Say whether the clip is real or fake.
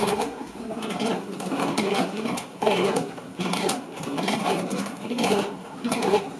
fake